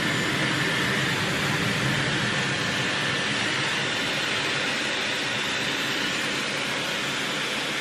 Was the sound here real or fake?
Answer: real